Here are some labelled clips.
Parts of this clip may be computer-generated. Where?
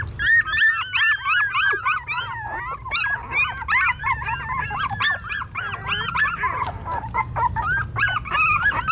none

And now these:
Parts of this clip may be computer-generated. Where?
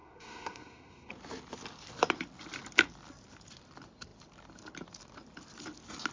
0.0-1.1 (codec, SNAC)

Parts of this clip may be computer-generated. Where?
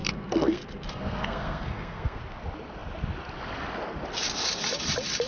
0.0-2.2 (codec, SNAC)